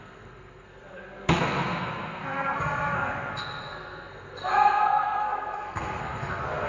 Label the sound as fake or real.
fake